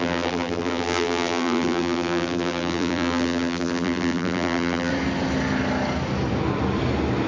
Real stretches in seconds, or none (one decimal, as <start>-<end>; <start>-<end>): 4.9-7.3